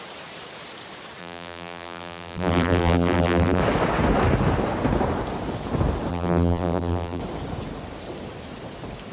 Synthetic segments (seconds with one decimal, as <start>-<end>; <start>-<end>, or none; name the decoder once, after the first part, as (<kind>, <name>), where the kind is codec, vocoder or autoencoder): 1.2-3.6 (vocoder, BigVGAN v2); 6.1-7.2